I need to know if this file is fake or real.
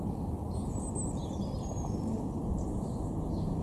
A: real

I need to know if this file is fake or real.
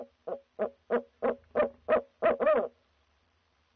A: real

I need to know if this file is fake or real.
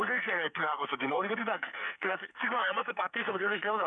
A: fake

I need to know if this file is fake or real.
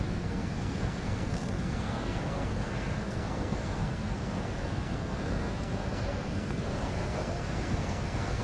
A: fake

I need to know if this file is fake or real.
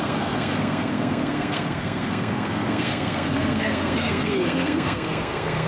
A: fake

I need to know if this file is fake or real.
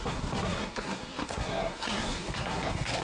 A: fake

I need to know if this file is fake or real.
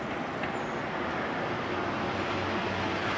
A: real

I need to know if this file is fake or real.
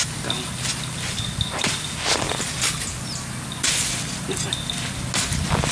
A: real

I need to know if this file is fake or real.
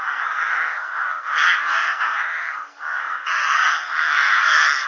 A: fake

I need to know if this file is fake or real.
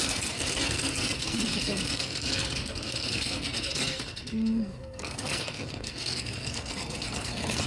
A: fake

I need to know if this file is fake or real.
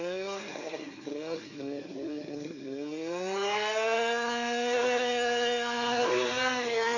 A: fake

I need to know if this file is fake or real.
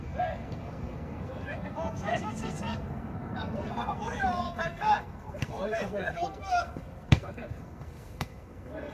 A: fake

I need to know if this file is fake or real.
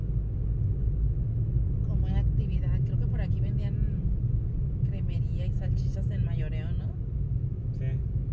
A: real